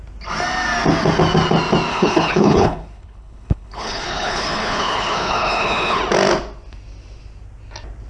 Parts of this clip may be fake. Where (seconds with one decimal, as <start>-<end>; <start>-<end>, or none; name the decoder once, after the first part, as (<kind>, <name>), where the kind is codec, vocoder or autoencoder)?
1.9-6.0 (codec, HILCodec)